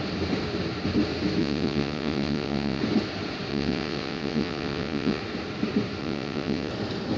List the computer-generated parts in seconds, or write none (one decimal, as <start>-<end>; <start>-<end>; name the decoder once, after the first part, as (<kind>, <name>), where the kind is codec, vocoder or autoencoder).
1.4-2.8 (vocoder, WaveNeXt); 3.5-5.2; 6.0-6.7